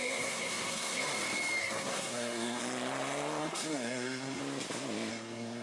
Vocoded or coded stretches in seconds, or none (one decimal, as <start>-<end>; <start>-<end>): 0.0-1.0; 1.6-2.6; 3.4-4.4; 5.1-5.6